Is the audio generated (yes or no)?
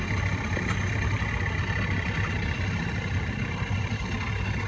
no